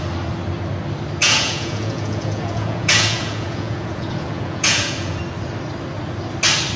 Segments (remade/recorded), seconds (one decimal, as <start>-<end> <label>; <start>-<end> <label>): 0.0-1.2 recorded; 1.2-5.2 remade; 5.2-6.8 recorded